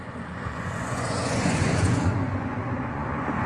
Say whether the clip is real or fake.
fake